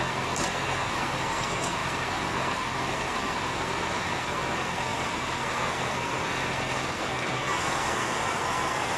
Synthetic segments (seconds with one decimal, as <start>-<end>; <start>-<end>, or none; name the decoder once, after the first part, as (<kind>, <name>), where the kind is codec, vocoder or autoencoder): 0.0-9.0 (codec, SNAC)